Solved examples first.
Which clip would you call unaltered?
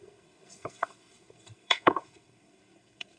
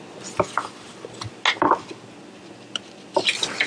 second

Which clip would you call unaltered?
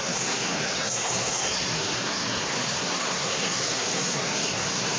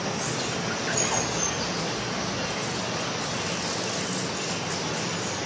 second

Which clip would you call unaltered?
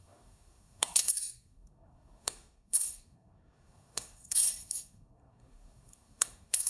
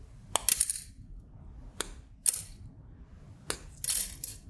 second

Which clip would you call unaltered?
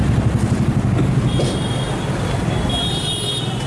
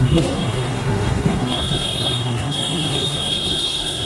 first